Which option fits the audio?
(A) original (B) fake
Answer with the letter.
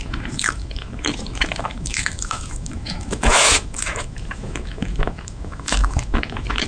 B